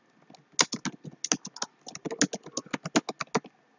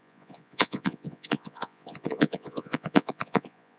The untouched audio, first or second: first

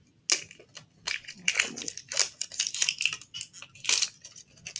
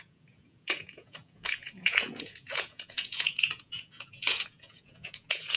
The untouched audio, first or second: first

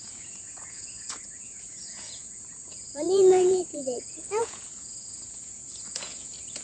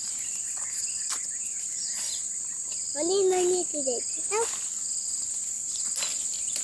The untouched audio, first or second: second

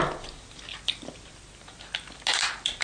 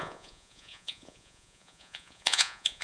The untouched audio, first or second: first